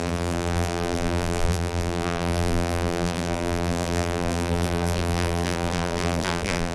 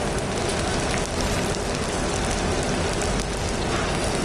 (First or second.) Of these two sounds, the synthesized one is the first